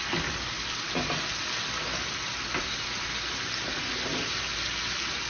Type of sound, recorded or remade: recorded